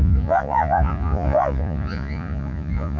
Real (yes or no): no